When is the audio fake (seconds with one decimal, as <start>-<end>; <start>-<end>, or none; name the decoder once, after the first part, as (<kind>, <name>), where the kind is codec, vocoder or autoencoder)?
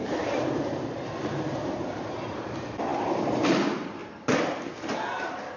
0.0-4.0 (vocoder, BigVGAN v2); 4.8-5.6